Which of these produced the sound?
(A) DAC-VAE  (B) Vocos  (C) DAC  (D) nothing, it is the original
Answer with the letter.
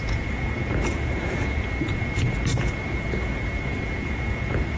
B